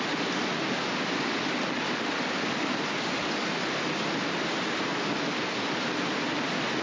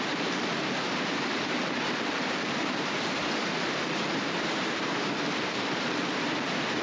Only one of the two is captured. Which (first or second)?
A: first